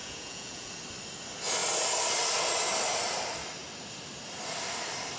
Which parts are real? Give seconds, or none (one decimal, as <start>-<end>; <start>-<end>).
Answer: 0.7-5.2